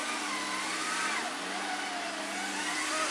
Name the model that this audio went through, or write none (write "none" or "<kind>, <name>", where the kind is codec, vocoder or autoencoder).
none